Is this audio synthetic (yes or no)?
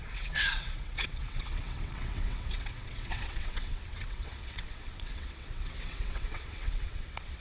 yes